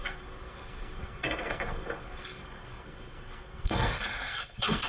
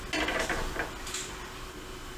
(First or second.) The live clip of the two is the second